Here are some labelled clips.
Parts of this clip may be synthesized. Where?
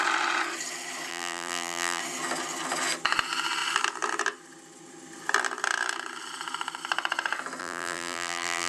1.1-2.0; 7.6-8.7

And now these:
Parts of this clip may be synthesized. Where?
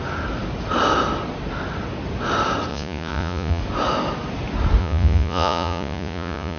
2.7-3.6; 4.8-6.6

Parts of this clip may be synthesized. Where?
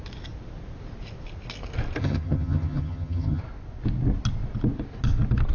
2.0-3.4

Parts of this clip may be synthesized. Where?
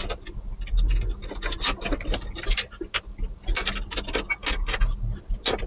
none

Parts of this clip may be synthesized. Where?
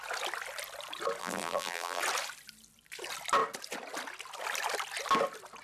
1.2-2.0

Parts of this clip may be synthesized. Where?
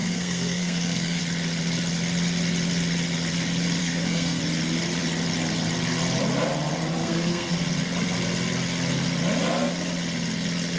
0.0-1.2; 3.8-4.4; 7.0-7.5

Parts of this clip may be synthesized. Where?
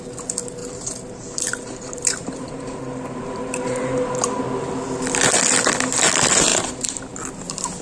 0.6-4.4; 6.5-7.0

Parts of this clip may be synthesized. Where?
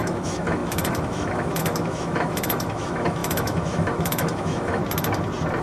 0.0-4.8